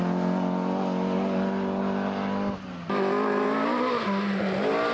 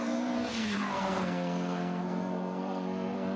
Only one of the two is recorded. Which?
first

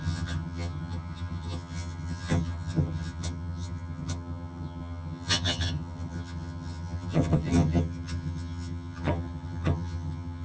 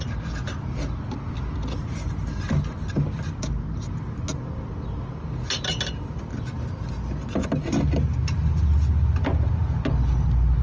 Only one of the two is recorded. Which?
second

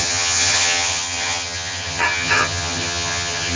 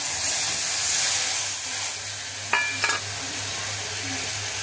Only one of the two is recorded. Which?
second